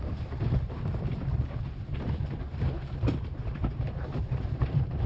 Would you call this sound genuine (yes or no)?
no